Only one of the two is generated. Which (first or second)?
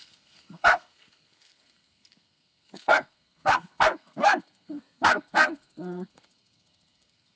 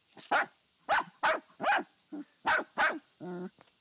first